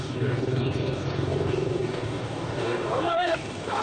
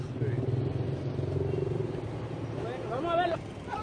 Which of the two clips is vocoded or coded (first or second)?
first